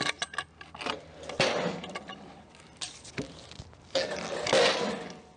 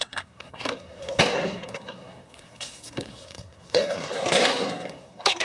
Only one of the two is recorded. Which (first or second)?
first